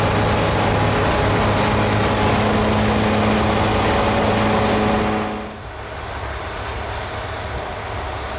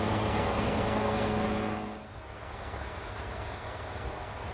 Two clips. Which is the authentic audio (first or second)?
first